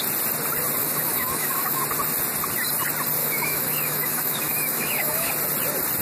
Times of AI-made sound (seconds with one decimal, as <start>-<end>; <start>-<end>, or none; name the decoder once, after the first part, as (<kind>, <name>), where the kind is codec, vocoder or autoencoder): 0.8-1.8 (autoencoder, DAC-VAE); 3.2-5.3

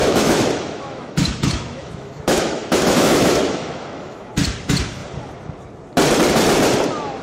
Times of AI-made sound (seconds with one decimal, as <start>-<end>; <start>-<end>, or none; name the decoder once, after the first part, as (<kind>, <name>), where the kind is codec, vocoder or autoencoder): 0.0-4.3 (autoencoder, DAC-VAE)